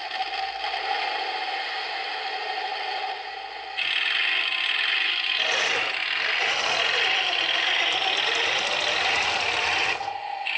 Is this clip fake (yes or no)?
no